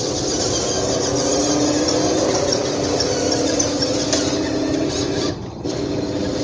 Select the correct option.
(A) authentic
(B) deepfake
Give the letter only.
A